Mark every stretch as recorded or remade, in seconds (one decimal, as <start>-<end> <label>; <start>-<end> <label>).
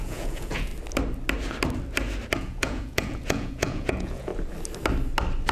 0.0-0.7 remade; 0.7-2.4 recorded; 2.4-4.3 remade; 4.3-5.5 recorded